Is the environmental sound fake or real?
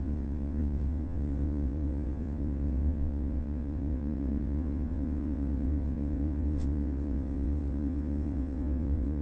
fake